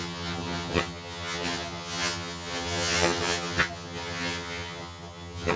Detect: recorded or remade remade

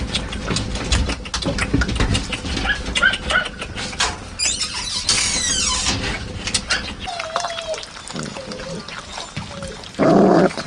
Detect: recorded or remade recorded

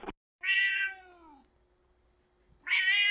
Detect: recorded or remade recorded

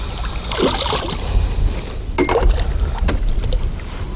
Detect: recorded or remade recorded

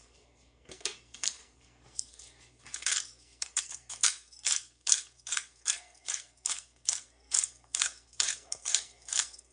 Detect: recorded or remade remade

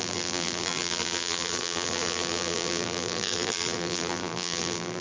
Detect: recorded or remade remade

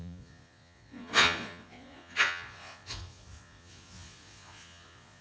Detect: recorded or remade remade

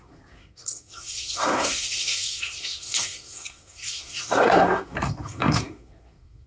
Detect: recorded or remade remade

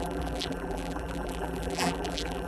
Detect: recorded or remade remade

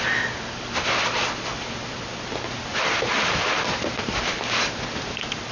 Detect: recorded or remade recorded